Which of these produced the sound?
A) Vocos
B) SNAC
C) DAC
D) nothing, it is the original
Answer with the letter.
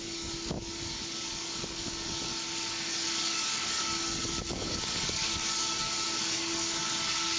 C